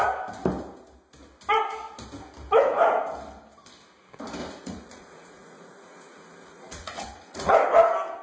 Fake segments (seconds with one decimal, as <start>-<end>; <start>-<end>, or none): 4.4-7.5